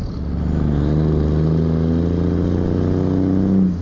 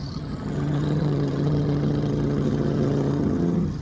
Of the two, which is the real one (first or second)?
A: first